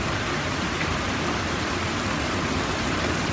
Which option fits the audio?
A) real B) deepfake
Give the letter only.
A